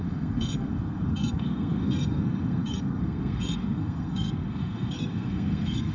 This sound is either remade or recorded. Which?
remade